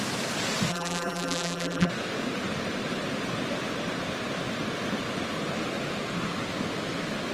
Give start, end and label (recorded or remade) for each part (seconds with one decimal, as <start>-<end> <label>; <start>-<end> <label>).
0.0-0.7 recorded; 0.7-1.9 remade; 1.9-7.3 recorded